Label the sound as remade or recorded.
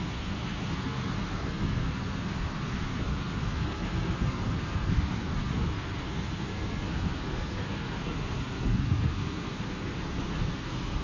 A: remade